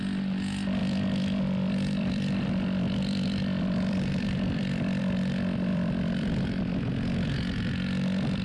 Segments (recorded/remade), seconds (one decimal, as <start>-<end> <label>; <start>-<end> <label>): 0.0-0.8 recorded; 0.8-5.0 remade; 5.0-5.7 recorded; 5.7-6.6 remade; 6.6-8.4 recorded